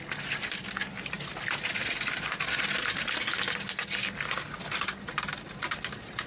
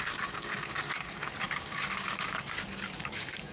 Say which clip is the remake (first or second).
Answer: second